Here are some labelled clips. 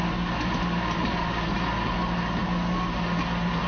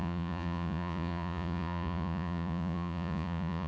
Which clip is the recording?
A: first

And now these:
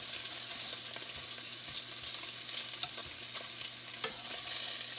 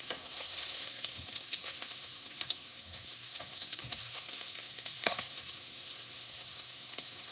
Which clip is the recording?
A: first